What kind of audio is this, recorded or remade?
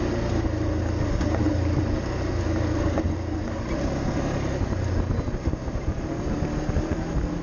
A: recorded